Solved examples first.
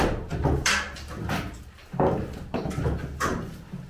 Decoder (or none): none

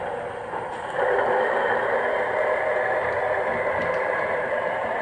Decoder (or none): vocoder, BigVGAN v2